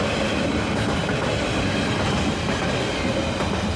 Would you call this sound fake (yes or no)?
no